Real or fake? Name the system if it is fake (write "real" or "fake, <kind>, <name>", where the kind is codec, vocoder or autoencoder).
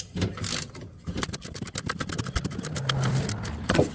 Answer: real